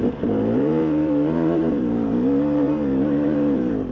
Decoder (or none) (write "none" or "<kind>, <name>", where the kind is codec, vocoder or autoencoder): vocoder, BigVGAN v2